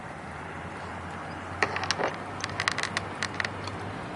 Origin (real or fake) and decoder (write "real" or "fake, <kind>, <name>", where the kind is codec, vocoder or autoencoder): real